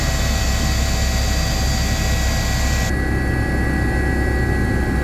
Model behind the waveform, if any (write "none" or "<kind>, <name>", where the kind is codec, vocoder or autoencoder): none